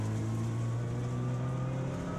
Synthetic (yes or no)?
no